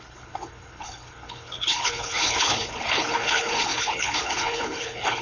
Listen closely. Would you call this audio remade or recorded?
remade